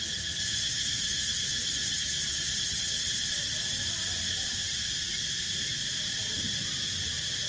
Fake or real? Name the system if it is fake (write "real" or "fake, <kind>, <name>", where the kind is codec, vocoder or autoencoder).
real